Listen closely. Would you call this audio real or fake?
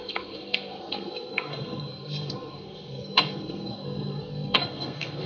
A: fake